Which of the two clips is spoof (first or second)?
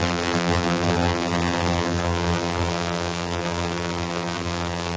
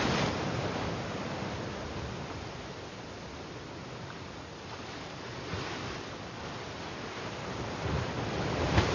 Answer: first